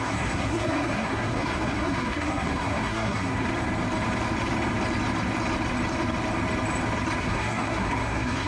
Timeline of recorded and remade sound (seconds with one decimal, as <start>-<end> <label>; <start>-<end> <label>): 0.0-3.5 remade; 3.5-7.2 recorded; 7.2-8.5 remade